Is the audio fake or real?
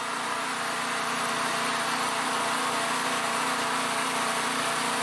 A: real